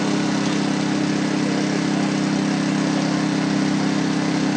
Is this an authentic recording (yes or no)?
yes